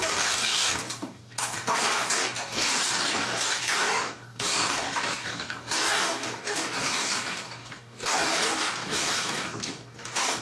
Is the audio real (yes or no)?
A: no